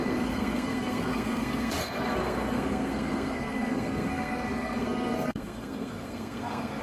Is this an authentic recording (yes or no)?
no